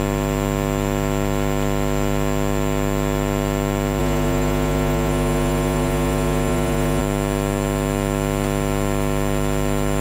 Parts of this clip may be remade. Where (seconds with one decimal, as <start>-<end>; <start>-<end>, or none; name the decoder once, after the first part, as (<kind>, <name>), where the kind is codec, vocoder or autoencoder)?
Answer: 4.0-7.0 (vocoder, Vocos)